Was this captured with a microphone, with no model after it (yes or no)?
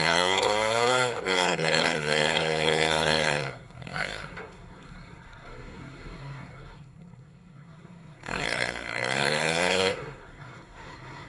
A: no